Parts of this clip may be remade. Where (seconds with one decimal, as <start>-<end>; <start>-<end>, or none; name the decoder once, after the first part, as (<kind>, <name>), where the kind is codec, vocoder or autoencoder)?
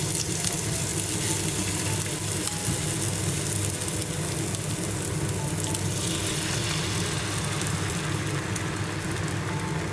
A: none